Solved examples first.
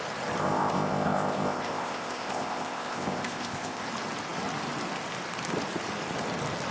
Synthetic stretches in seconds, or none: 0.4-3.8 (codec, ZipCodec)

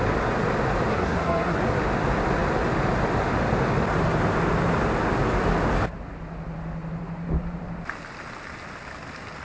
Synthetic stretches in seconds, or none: 0.9-1.6 (codec, SNAC)

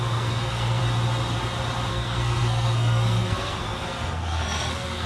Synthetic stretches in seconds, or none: 0.0-0.8 (codec, SNAC); 1.9-5.1

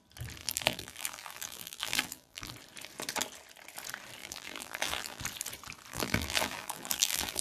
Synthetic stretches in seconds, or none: 0.4-2.5 (vocoder, BigVGAN v2); 4.2-5.2; 5.9-7.4

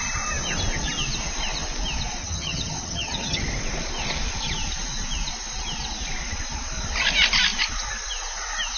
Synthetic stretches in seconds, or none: 2.2-3.4 (vocoder, HiFi-GAN)